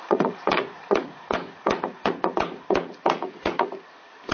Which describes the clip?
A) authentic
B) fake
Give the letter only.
B